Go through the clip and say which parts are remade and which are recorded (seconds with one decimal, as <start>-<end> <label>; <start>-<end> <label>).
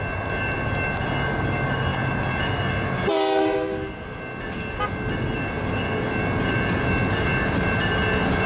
0.0-1.9 recorded; 1.9-2.8 remade; 2.8-8.5 recorded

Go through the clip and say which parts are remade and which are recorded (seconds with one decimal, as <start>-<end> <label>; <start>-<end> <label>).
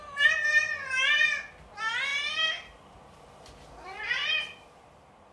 0.0-2.1 recorded; 2.1-3.4 remade; 3.4-4.2 recorded; 4.2-5.3 remade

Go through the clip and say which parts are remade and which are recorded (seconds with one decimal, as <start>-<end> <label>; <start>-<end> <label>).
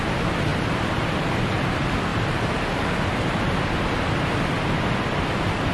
0.0-0.5 recorded; 0.5-1.1 remade; 1.1-2.1 recorded; 2.1-3.4 remade; 3.4-5.7 recorded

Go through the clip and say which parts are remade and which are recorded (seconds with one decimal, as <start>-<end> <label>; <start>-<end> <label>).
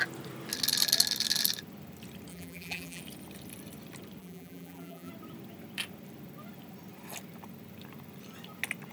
0.0-2.3 recorded; 2.3-3.0 remade; 3.0-4.2 recorded; 4.2-5.1 remade; 5.1-8.9 recorded